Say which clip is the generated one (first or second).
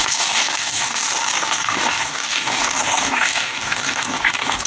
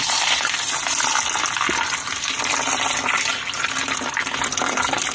first